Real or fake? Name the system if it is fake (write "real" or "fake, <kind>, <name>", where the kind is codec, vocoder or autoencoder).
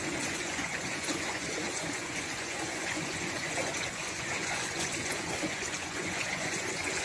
fake, vocoder, Vocos